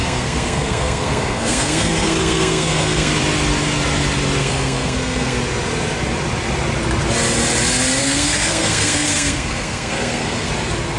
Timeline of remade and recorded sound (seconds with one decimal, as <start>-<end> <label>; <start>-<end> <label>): 0.0-3.1 remade; 3.1-4.4 recorded; 4.4-5.4 remade; 5.4-8.0 recorded; 8.0-10.5 remade; 10.5-11.0 recorded